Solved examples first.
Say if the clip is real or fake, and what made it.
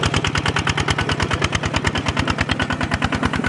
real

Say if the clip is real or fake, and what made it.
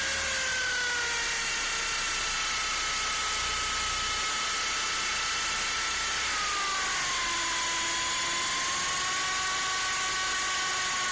real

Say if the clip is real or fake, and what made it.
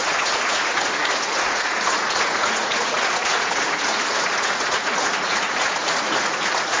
fake, vocoder, Vocos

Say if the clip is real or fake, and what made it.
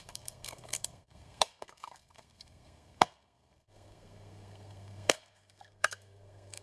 fake, codec, SNAC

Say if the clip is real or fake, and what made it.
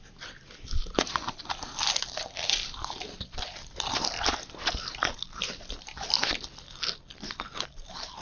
real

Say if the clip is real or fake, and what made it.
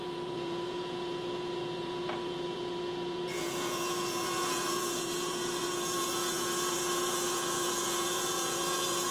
fake, vocoder, Vocos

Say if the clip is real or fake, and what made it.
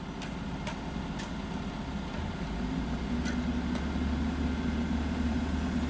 real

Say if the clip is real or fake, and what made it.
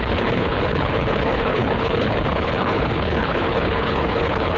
fake, codec, HILCodec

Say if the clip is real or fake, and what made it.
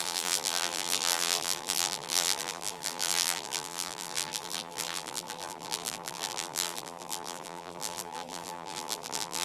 fake, vocoder, BigVGAN v2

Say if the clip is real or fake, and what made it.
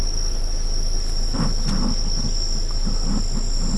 real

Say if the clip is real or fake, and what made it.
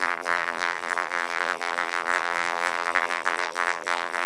fake, vocoder, BigVGAN v2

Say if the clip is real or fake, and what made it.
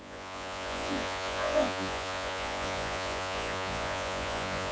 fake, vocoder, Vocos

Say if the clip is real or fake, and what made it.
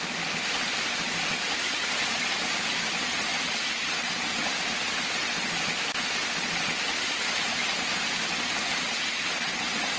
real